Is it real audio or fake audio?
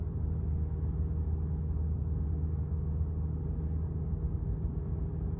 real